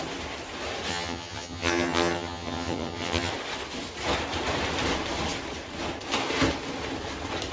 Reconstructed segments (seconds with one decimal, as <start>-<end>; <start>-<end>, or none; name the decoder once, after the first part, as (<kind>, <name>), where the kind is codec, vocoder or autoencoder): 0.9-3.3 (vocoder, HiFi-GAN)